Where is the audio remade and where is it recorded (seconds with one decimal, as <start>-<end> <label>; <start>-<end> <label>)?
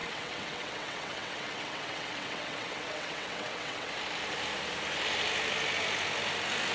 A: 0.0-3.9 remade; 3.9-6.7 recorded